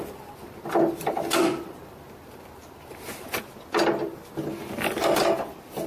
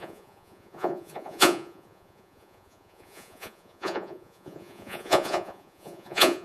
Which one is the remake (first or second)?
second